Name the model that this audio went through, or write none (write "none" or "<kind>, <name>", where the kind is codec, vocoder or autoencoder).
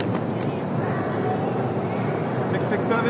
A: none